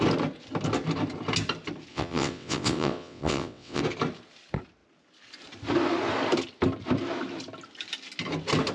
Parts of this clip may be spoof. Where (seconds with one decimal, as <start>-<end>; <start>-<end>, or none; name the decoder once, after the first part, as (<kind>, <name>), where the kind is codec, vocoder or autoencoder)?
1.9-3.8 (vocoder, WaveNeXt)